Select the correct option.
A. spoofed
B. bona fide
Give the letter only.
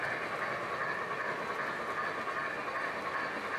B